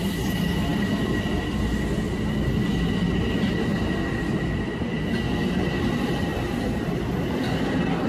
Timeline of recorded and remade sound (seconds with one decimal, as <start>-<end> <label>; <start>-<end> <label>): 0.0-0.7 recorded; 0.7-1.4 remade; 1.4-8.1 recorded